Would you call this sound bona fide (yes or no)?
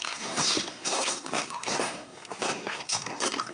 no